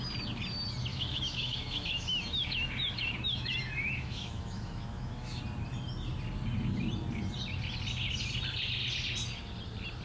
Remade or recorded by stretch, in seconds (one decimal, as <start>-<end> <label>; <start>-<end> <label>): 0.0-0.9 recorded; 0.9-5.4 remade; 5.4-10.0 recorded